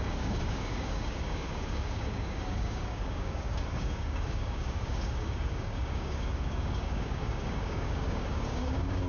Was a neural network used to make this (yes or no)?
yes